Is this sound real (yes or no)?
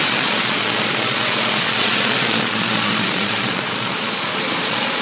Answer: no